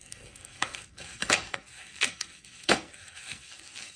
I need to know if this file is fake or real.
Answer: fake